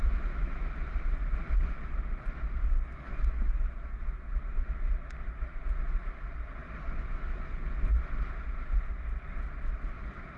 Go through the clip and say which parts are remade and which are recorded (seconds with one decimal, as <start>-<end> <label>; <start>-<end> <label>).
0.0-2.6 recorded; 2.6-4.7 remade; 4.7-10.4 recorded